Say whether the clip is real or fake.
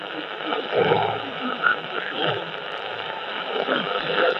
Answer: fake